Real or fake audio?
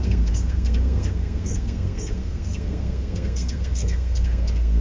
fake